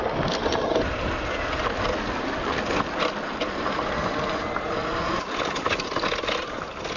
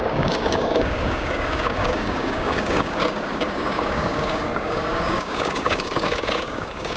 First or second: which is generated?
second